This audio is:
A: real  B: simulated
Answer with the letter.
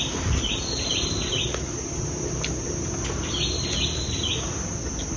A